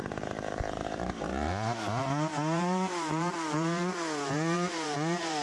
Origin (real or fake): fake